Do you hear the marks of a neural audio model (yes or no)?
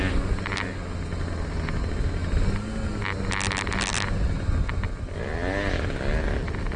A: no